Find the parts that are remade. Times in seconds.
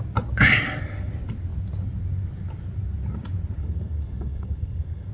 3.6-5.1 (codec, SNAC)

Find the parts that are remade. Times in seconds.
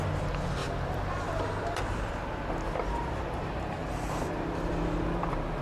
0.6-1.8 (vocoder, BigVGAN v2); 3.8-4.3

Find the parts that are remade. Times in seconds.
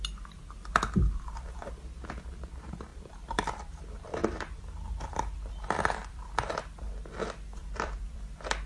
2.9-3.8 (vocoder, BigVGAN v2); 4.2-6.5; 7.6-8.7